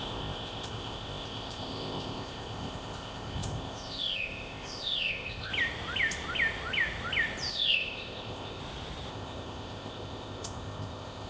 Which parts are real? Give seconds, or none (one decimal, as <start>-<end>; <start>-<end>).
5.5-7.5; 8.6-9.1